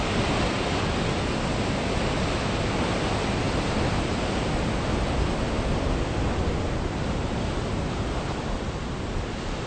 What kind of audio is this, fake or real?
real